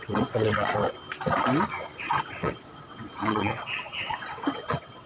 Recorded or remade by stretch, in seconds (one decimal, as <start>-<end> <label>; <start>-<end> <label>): 0.0-1.0 remade; 1.0-2.0 recorded; 2.0-5.1 remade